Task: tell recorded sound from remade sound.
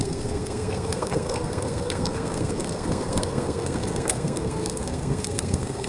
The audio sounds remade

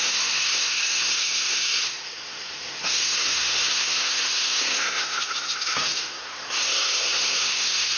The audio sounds remade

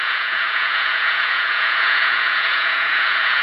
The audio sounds remade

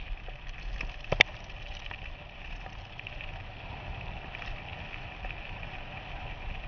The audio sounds recorded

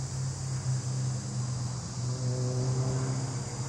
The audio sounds recorded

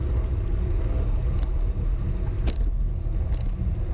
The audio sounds recorded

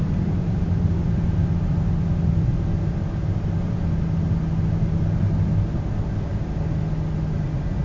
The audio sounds recorded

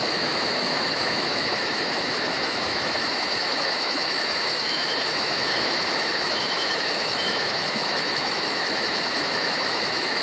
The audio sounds remade